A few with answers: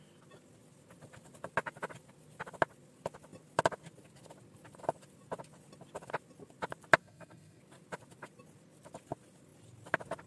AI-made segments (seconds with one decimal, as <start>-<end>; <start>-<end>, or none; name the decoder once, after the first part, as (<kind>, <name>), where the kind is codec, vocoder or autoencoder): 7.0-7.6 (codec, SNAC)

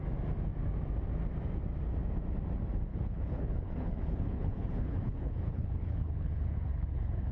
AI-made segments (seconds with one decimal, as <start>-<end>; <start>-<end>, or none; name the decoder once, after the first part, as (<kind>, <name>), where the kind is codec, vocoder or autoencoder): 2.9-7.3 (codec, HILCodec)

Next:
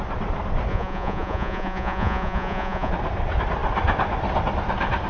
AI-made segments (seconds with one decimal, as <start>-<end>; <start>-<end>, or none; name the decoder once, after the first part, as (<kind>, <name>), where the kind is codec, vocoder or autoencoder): 0.7-2.9 (vocoder, Vocos)

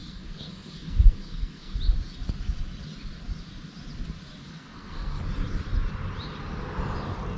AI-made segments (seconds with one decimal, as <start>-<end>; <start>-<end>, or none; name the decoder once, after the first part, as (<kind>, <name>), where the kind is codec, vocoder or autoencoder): 0.0-1.8 (codec, SNAC); 4.4-5.2

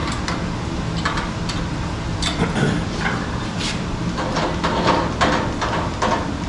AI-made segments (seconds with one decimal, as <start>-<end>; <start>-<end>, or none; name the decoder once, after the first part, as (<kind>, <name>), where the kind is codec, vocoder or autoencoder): 0.0-3.9 (vocoder, BigVGAN v2)